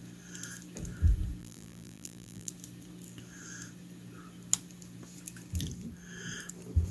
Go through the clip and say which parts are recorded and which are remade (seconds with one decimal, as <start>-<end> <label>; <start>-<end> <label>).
0.0-1.4 recorded; 1.4-2.5 remade; 2.5-6.9 recorded